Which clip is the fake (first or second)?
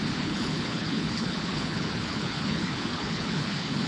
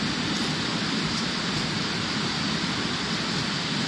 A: first